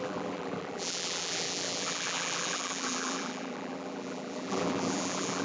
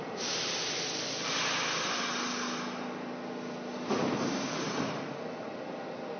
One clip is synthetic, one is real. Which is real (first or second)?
second